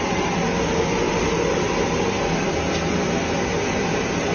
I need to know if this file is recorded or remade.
recorded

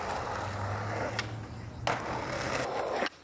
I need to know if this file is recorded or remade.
recorded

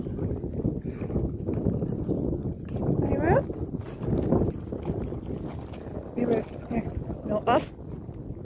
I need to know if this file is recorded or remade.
recorded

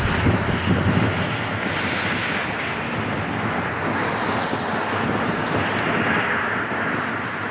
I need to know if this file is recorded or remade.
recorded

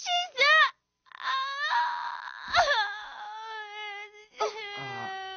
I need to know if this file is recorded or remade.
recorded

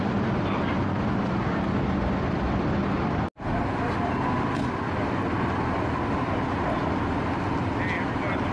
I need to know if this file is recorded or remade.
recorded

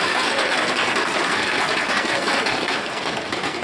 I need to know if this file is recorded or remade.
remade